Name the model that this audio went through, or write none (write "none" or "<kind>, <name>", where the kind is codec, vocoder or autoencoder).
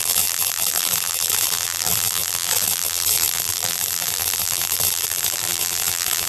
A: vocoder, BigVGAN v2